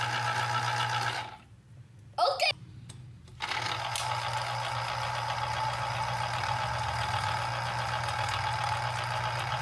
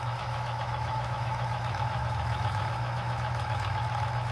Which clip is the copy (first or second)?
second